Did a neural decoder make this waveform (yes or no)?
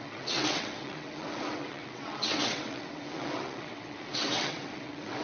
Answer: yes